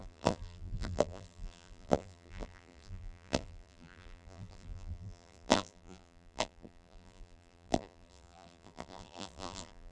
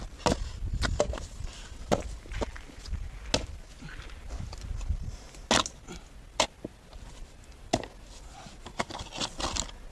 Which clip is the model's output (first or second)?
first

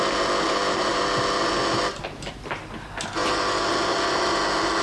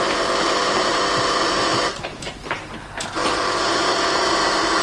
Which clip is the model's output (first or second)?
second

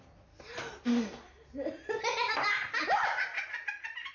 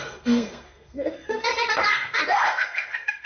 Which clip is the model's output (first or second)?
second